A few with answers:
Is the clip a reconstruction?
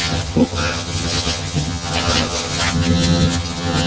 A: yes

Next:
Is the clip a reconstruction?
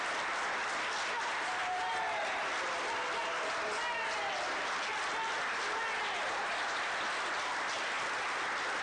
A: no